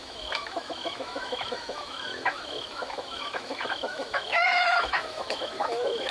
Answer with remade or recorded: remade